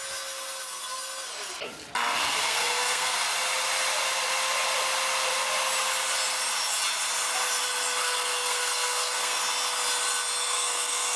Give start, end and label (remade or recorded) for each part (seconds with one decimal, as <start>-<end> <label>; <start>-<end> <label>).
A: 0.0-2.3 recorded; 2.3-3.1 remade; 3.1-8.0 recorded; 8.0-9.4 remade; 9.4-10.4 recorded; 10.4-11.2 remade